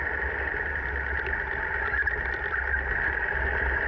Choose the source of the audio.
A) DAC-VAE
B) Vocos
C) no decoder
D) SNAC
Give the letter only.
C